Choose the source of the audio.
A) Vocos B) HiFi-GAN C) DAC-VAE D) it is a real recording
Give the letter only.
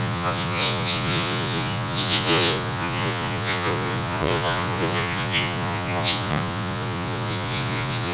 A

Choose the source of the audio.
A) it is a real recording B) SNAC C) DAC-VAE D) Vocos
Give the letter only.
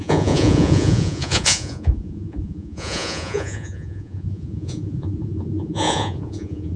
D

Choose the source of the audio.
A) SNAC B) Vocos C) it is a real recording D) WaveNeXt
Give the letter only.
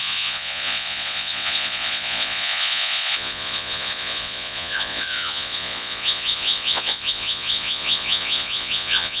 B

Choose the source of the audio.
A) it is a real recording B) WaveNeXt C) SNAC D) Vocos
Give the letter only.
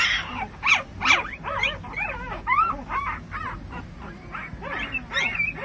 A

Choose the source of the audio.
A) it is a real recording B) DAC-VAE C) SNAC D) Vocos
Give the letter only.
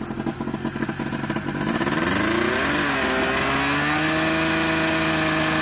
A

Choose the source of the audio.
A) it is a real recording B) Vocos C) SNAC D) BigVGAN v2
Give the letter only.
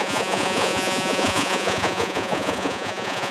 B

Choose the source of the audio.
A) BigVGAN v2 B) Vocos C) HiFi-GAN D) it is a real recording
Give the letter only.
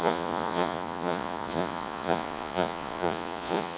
B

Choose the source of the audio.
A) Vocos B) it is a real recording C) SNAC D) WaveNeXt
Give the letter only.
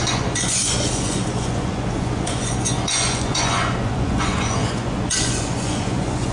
A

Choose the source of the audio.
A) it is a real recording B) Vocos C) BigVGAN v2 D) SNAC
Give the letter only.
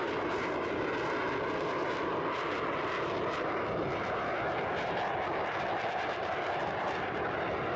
A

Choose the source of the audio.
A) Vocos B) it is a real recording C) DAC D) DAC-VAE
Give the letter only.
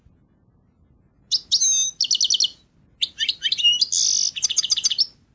B